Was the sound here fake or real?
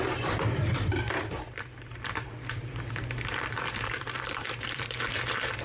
fake